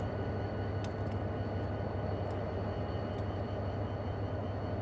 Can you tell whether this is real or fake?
real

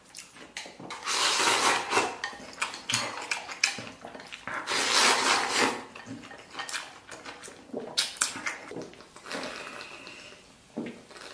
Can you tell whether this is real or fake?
real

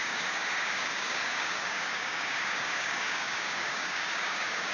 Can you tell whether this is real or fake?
fake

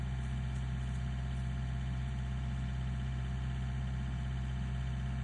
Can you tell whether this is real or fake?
real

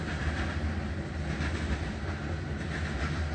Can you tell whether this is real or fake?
real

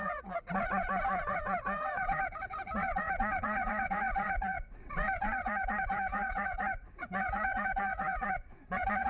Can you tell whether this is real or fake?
fake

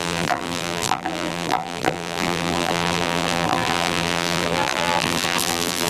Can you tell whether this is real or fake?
fake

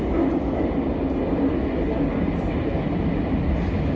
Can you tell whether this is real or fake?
real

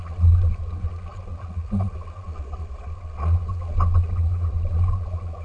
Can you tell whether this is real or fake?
fake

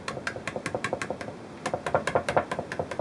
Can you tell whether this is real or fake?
real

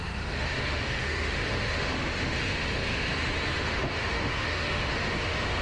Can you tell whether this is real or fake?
fake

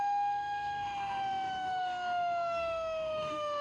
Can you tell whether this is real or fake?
fake